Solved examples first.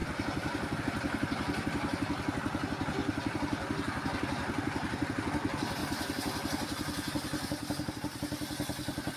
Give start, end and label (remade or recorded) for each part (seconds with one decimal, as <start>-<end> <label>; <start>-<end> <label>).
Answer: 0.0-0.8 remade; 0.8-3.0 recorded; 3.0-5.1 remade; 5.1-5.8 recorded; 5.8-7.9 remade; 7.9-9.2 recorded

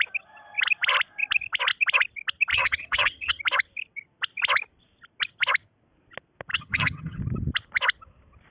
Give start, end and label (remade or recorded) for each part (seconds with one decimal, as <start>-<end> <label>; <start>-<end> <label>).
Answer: 0.0-2.5 recorded; 2.5-3.4 remade; 3.4-6.5 recorded; 6.5-7.2 remade; 7.2-8.5 recorded

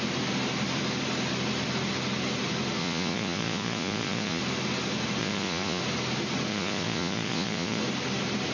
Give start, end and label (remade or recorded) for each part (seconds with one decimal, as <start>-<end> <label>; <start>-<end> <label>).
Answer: 0.0-2.8 recorded; 2.8-4.4 remade; 4.4-5.2 recorded; 5.2-5.8 remade; 5.8-6.5 recorded; 6.5-7.8 remade; 7.8-8.5 recorded